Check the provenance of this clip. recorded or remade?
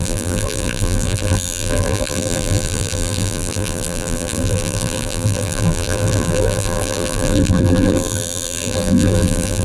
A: remade